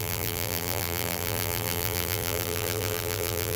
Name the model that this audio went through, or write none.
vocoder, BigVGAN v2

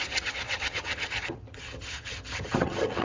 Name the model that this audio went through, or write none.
vocoder, HiFi-GAN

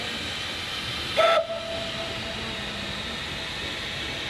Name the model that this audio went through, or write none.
none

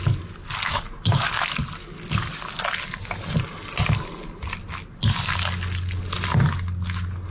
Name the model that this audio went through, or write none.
none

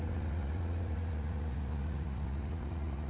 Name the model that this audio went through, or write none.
vocoder, Vocos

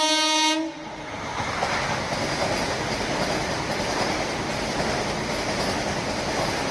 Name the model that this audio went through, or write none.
none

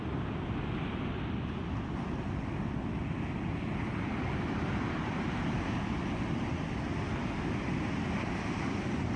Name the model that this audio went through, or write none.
none